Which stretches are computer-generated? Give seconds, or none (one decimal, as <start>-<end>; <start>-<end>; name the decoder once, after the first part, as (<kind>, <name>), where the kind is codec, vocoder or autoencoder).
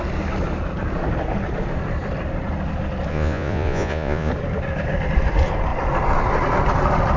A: 3.1-4.3 (vocoder, Vocos)